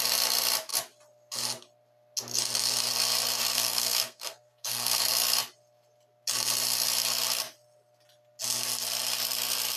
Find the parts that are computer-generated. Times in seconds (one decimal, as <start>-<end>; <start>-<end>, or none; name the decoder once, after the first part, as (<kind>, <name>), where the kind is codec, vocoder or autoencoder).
3.4-5.0 (codec, SNAC)